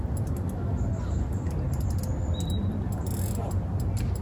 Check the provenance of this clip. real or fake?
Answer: real